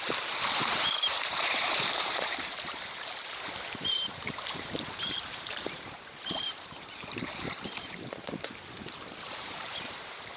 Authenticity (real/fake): fake